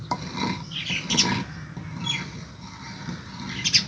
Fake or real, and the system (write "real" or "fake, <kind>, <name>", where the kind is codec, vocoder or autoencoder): real